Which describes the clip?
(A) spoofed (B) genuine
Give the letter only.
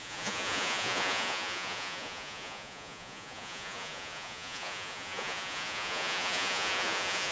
A